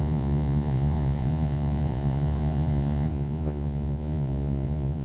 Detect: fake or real fake